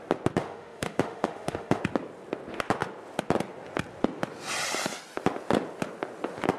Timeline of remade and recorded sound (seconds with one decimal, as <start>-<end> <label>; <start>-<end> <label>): 0.0-0.4 recorded; 0.4-1.8 remade; 1.8-6.6 recorded